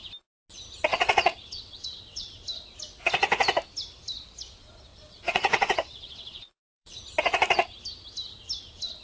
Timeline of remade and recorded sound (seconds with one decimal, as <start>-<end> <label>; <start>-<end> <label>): 0.0-0.9 recorded; 0.9-2.4 remade; 2.4-4.9 recorded; 4.9-7.0 remade; 7.0-9.0 recorded